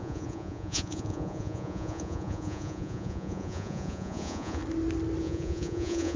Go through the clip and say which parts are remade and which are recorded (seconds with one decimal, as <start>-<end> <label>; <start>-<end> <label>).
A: 0.0-4.6 remade; 4.6-5.2 recorded; 5.2-6.2 remade